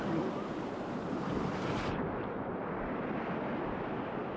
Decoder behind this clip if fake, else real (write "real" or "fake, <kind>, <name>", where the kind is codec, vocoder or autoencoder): real